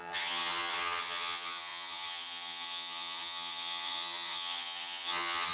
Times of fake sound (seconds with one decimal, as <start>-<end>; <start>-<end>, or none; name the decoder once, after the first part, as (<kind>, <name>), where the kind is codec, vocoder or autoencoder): 0.0-5.5 (vocoder, HiFi-GAN)